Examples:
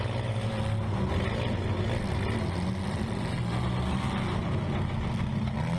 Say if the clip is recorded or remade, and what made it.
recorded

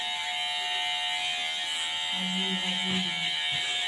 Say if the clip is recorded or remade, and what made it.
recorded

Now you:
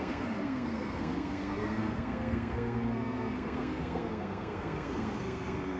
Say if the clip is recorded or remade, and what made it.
remade, codec, SNAC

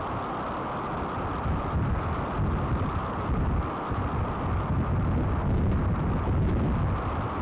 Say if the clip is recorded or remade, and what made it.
recorded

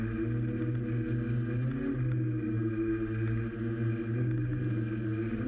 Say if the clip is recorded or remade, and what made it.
recorded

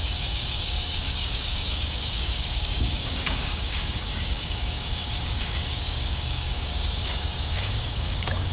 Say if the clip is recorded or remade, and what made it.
remade, codec, DAC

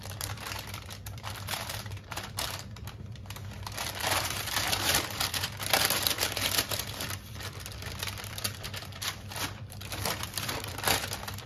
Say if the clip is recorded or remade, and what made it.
remade, vocoder, BigVGAN v2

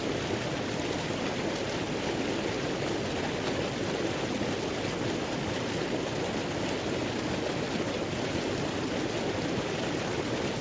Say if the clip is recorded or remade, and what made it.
recorded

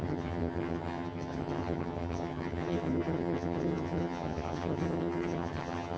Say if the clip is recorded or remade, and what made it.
remade, vocoder, HiFi-GAN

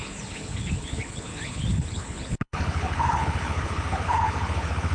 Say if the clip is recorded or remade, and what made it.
remade, codec, HILCodec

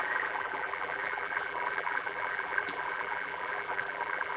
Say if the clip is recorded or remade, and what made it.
remade, vocoder, BigVGAN v2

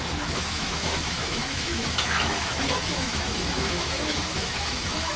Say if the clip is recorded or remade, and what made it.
remade, autoencoder, DAC-VAE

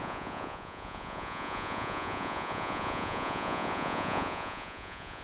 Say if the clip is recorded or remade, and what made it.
remade, vocoder, Vocos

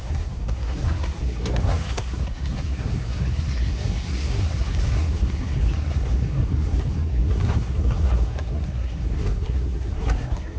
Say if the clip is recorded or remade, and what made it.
remade, codec, SNAC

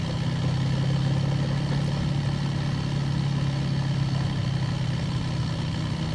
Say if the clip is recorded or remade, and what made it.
recorded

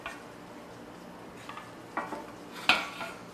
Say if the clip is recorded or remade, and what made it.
recorded